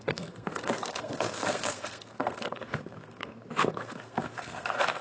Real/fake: fake